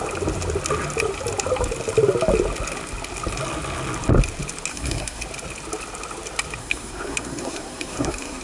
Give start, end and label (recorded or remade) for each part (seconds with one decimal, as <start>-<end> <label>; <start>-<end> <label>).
0.0-4.7 recorded; 4.7-5.2 remade; 5.2-6.6 recorded; 6.6-8.4 remade